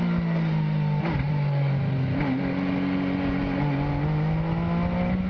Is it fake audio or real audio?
real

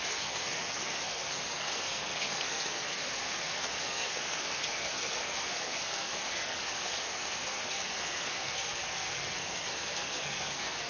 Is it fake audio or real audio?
fake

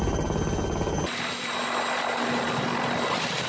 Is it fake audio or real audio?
real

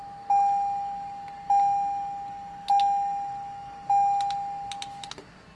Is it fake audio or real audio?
real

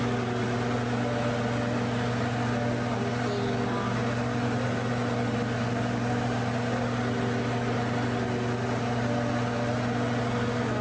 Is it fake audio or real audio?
real